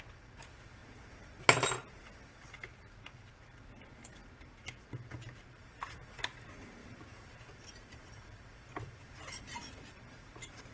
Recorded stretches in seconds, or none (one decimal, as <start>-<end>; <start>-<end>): 0.0-6.8; 9.9-10.7